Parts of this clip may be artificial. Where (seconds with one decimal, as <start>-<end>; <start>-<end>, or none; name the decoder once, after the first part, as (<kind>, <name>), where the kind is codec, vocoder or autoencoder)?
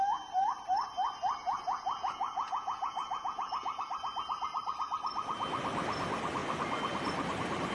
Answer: 1.4-3.8 (vocoder, Vocos)